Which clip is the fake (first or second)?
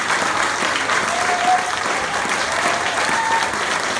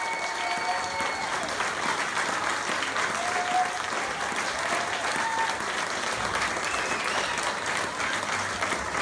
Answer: first